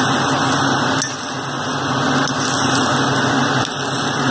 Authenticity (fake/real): real